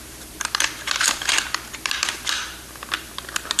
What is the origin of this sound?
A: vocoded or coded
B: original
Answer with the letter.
A